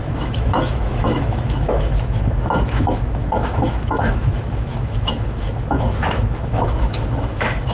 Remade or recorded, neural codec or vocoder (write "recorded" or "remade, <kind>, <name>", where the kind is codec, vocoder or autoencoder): remade, autoencoder, DAC-VAE